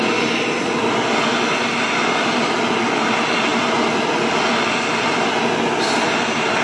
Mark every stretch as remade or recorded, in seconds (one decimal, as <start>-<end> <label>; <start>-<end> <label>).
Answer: 0.0-6.6 recorded